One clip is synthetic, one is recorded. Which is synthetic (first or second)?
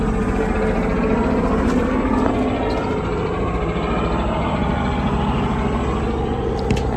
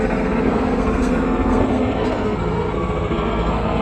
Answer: second